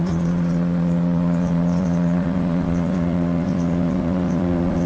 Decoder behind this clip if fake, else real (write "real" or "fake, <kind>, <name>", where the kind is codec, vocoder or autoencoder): fake, vocoder, Vocos